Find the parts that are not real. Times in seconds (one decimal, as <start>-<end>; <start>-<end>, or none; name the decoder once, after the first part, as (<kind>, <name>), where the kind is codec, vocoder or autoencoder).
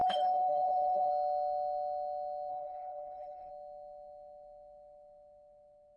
0.0-1.1 (codec, HILCodec); 2.5-3.5